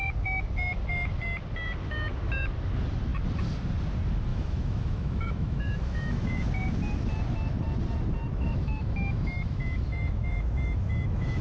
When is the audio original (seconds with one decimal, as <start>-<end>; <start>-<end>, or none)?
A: 0.0-4.3; 6.5-8.3